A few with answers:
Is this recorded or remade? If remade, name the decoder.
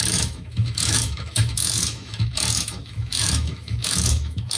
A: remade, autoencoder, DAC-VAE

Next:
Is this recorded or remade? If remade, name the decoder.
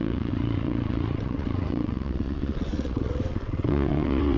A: remade, vocoder, WaveNeXt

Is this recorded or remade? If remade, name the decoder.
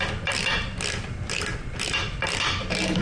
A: remade, vocoder, BigVGAN v2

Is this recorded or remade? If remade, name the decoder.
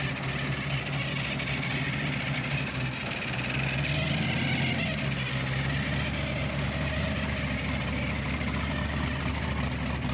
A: recorded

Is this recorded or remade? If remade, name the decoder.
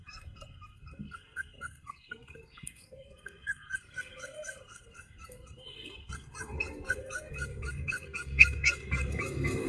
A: remade, codec, SNAC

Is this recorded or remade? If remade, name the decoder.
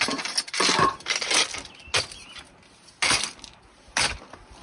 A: recorded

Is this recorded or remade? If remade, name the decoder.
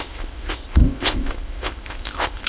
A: remade, codec, ZipCodec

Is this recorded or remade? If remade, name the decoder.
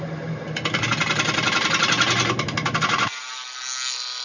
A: recorded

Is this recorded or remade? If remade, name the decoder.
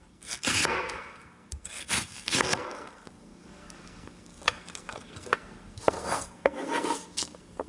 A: remade, codec, SNAC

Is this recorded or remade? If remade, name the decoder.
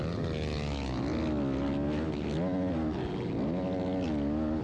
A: recorded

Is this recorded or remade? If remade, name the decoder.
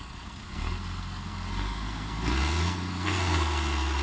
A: remade, codec, SNAC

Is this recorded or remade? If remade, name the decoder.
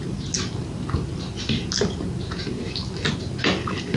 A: recorded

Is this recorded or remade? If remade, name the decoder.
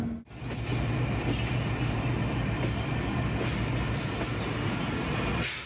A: recorded